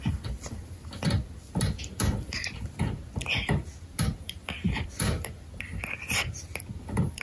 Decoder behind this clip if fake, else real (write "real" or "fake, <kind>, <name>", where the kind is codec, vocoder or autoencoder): real